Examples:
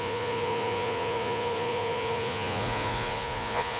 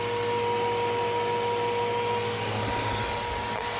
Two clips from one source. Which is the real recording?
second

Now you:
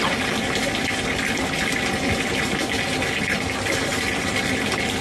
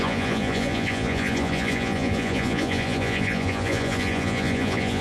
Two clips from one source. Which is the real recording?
first